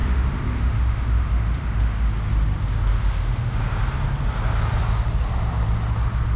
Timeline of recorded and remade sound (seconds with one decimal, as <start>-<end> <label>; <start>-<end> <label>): 0.0-2.1 remade; 2.1-2.9 recorded; 2.9-3.6 remade; 3.6-6.4 recorded